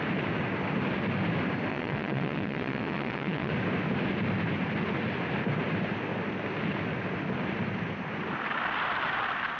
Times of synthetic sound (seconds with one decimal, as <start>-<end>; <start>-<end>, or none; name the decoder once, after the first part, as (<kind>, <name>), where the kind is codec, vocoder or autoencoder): 1.7-3.5 (vocoder, WaveNeXt)